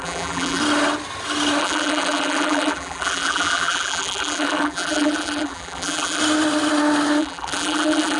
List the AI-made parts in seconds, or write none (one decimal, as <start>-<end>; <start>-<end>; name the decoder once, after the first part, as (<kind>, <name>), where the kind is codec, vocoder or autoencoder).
0.0-0.6 (vocoder, BigVGAN v2); 1.6-6.2; 7.2-8.2